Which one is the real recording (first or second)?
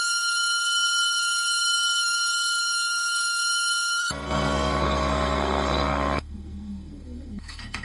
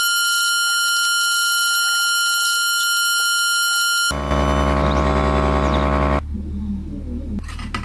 second